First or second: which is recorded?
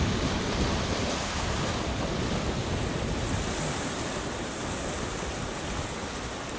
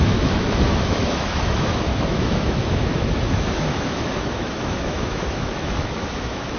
first